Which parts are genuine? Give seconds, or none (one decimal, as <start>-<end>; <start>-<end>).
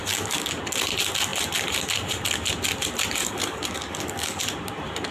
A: 0.6-3.2; 4.4-5.1